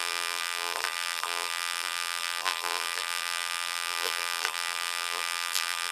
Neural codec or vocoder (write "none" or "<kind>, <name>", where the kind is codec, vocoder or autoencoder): vocoder, BigVGAN v2